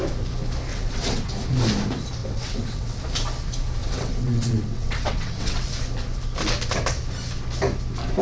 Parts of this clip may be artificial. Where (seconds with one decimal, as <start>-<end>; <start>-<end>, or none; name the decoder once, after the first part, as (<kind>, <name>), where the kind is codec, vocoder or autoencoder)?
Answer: 0.7-1.3 (vocoder, WaveNeXt); 2.2-3.0; 3.8-5.7

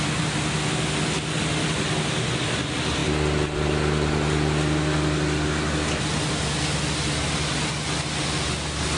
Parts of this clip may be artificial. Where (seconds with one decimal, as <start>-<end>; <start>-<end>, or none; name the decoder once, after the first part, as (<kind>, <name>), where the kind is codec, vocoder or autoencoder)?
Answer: none

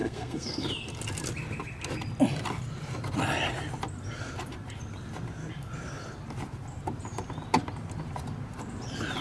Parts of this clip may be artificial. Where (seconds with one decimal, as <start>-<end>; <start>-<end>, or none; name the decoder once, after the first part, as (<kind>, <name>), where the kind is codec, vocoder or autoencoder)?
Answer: 0.0-0.7 (codec, SNAC)

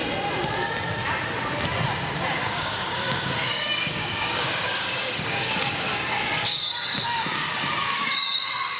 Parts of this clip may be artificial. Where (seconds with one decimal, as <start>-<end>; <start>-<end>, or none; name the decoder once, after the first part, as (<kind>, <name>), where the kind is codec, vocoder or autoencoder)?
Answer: 2.3-8.8 (codec, DAC)

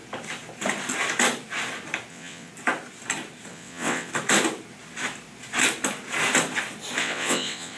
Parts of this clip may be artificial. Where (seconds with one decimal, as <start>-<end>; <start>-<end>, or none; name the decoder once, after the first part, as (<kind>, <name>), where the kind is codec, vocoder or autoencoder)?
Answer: 2.1-2.5 (vocoder, WaveNeXt); 3.5-4.1; 7.0-7.8